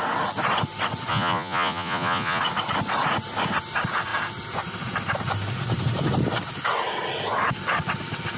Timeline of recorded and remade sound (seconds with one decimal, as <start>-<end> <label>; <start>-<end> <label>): 0.0-1.1 recorded; 1.1-2.4 remade; 2.4-8.4 recorded